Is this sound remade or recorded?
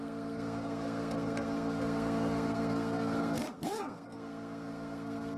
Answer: remade